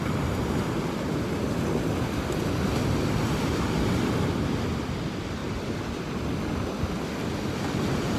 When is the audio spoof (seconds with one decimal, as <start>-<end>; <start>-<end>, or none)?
none